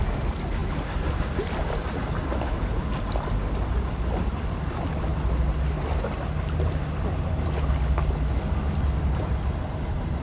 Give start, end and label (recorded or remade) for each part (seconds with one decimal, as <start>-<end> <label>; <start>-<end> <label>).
0.0-0.6 recorded; 0.6-1.9 remade; 1.9-10.2 recorded